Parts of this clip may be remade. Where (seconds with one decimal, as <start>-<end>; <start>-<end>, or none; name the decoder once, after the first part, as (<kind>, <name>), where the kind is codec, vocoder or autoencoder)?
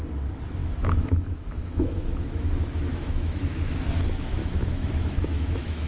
0.6-3.9 (autoencoder, DAC-VAE); 4.4-5.9